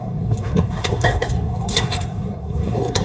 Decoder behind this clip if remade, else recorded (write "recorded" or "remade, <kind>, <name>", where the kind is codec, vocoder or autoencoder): remade, codec, SNAC